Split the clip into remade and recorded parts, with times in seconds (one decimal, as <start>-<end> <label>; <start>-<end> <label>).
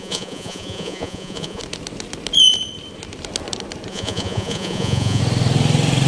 0.0-1.6 remade; 1.6-3.9 recorded; 3.9-5.2 remade; 5.2-6.1 recorded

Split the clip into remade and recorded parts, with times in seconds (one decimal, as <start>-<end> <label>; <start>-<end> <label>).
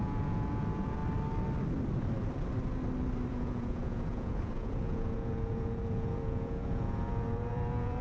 0.0-1.0 remade; 1.0-3.3 recorded; 3.3-8.0 remade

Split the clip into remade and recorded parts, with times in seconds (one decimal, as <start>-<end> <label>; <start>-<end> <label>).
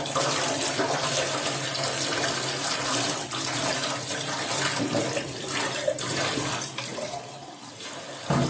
0.0-8.5 recorded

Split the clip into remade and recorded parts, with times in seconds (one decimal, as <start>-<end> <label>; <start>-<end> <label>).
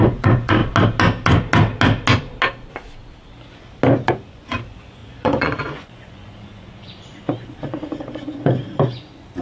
0.0-0.6 remade; 0.6-4.1 recorded; 4.1-9.4 remade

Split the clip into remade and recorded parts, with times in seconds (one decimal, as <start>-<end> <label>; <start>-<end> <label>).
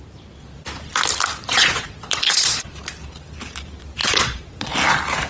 0.0-1.5 recorded; 1.5-2.7 remade; 2.7-4.0 recorded; 4.0-4.7 remade; 4.7-5.3 recorded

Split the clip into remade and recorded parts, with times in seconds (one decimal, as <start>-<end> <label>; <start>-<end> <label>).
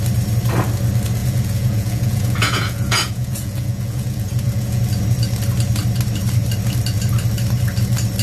0.0-1.2 recorded; 1.2-4.8 remade; 4.8-8.2 recorded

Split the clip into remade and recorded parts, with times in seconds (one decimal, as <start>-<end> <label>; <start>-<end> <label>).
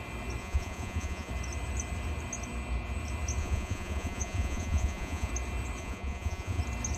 0.0-0.4 recorded; 0.4-1.3 remade; 1.3-3.4 recorded; 3.4-5.3 remade; 5.3-5.8 recorded; 5.8-6.6 remade; 6.6-7.0 recorded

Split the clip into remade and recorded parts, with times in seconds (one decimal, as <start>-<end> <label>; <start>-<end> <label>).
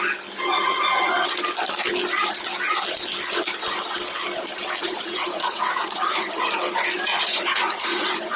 0.0-0.5 recorded; 0.5-1.3 remade; 1.3-4.8 recorded; 4.8-6.6 remade; 6.6-7.1 recorded; 7.1-8.4 remade